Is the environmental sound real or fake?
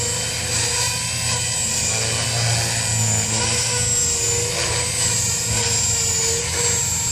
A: real